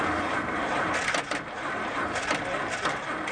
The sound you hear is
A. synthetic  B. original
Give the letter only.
B